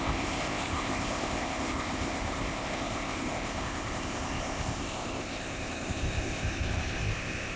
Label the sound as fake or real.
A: fake